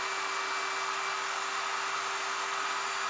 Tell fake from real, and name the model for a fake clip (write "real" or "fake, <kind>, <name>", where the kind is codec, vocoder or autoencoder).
real